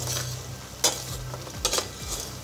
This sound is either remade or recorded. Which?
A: recorded